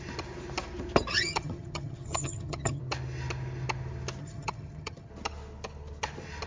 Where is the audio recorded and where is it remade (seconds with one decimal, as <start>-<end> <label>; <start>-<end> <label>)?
0.0-1.1 recorded; 1.1-2.8 remade; 2.8-4.2 recorded; 4.2-5.1 remade; 5.1-6.5 recorded